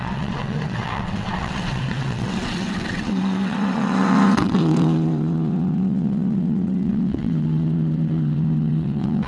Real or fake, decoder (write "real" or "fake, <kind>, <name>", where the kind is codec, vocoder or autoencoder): fake, vocoder, WaveNeXt